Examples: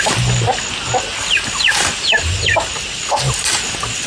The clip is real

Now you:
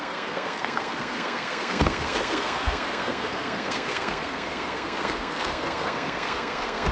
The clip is fake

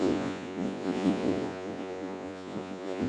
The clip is fake